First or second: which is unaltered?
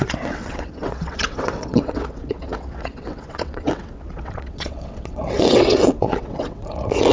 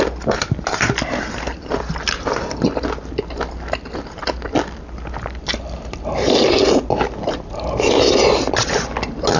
second